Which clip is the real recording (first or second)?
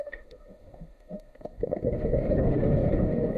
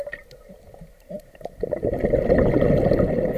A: second